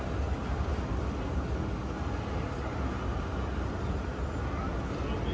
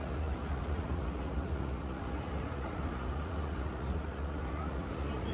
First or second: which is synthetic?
second